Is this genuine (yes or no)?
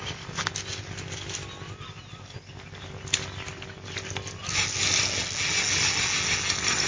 yes